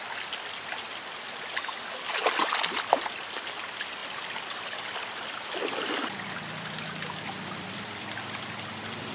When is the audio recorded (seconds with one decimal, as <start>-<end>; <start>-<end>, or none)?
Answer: 0.0-2.4; 3.3-4.0